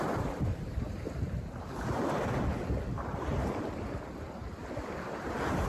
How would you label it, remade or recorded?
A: recorded